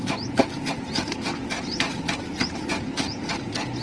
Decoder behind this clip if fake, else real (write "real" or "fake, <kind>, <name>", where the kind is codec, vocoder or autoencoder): real